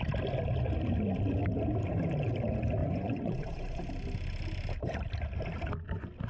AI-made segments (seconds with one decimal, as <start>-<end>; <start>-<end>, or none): 2.8-3.9